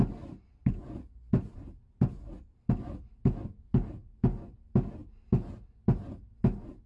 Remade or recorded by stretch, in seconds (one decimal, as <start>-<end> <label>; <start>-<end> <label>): 0.0-6.9 recorded